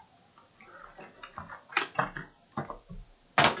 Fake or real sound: real